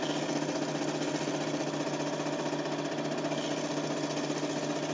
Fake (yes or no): no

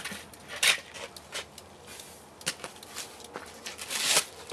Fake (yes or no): no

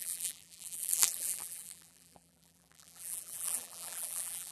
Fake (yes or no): yes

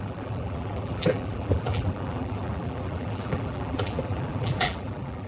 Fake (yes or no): yes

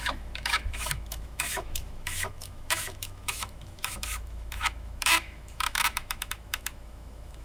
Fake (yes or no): yes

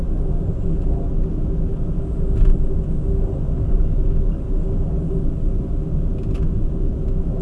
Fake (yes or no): no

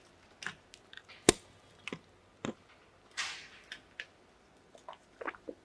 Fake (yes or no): no